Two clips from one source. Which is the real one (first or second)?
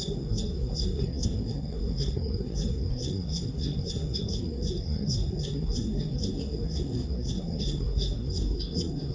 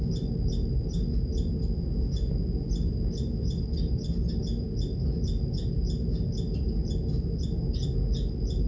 second